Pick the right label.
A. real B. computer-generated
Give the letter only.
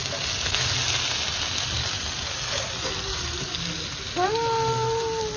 A